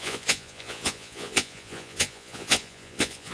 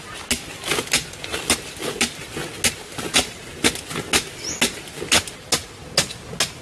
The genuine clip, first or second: second